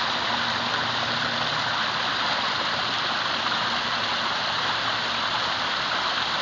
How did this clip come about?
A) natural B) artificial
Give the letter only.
A